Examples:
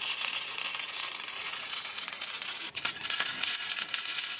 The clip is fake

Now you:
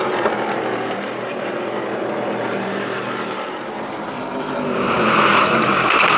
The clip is fake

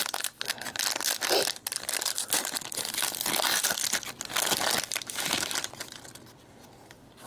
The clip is real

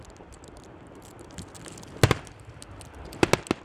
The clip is real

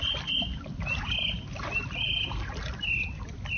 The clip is real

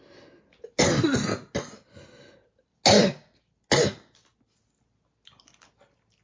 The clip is real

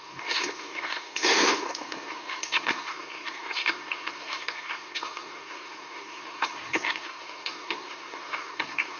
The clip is fake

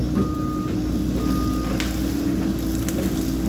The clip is real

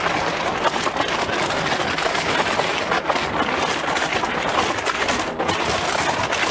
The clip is real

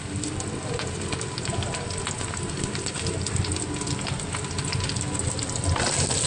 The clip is real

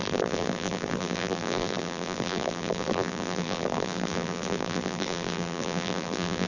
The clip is fake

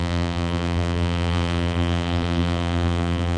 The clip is fake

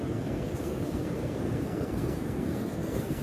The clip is fake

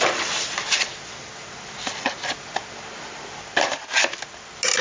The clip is real